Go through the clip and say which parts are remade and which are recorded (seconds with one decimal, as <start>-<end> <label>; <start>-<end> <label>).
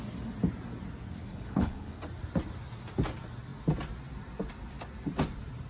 0.0-1.3 recorded; 1.3-2.0 remade; 2.0-5.7 recorded